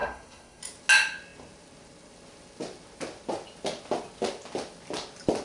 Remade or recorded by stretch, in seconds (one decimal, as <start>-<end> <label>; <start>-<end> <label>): 0.0-0.6 remade; 0.6-5.4 recorded